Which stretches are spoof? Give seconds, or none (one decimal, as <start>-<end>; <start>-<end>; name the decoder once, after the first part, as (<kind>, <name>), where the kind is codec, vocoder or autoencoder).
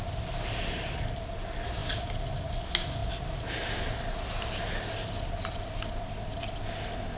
none